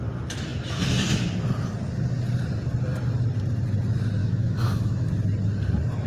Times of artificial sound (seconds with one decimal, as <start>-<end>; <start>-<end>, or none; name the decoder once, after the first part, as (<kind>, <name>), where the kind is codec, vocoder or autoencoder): 4.2-5.1 (autoencoder, DAC-VAE)